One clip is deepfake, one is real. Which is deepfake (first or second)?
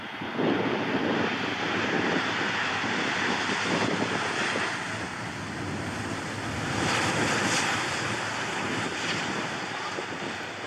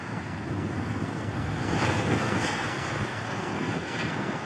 second